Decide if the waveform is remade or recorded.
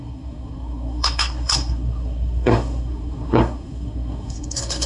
remade